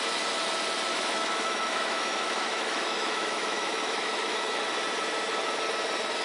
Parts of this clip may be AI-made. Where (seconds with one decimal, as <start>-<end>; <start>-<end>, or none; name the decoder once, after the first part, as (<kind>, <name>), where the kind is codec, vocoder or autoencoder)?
0.9-4.6 (autoencoder, DAC-VAE)